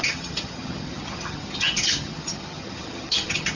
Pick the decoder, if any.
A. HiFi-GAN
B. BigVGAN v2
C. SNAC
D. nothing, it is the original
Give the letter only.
A